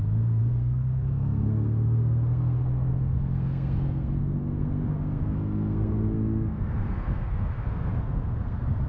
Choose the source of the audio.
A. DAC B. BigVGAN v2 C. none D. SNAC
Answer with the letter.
D